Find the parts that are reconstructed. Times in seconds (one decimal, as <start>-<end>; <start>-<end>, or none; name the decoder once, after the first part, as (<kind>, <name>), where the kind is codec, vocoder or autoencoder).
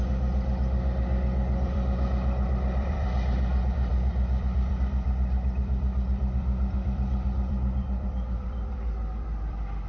0.0-9.9 (vocoder, BigVGAN v2)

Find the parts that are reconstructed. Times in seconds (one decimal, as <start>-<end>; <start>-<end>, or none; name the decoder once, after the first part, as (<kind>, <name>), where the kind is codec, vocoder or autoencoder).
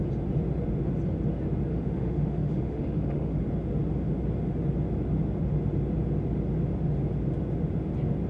1.7-3.4 (autoencoder, DAC-VAE)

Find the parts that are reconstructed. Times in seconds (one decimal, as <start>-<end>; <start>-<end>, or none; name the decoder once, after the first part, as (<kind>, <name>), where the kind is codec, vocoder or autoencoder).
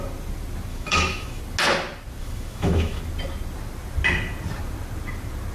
0.7-1.4 (autoencoder, DAC-VAE); 2.2-3.0